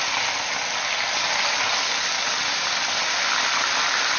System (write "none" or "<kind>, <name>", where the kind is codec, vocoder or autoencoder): none